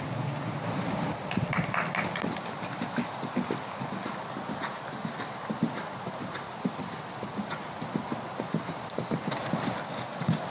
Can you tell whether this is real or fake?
real